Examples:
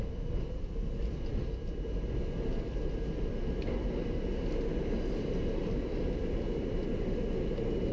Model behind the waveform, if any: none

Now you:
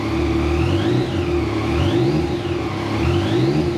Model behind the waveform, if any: none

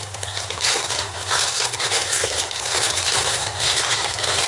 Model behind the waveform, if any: codec, SNAC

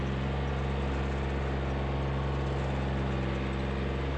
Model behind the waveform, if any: none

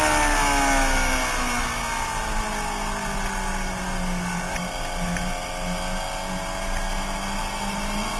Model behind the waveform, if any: none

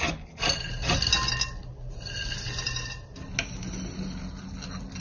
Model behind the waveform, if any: none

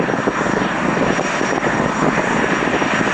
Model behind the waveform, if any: none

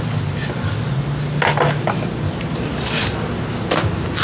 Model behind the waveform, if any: none